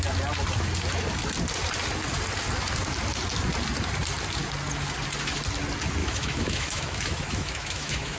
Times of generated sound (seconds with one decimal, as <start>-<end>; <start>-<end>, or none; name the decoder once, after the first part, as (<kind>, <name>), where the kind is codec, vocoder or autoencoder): 6.0-8.2 (autoencoder, DAC-VAE)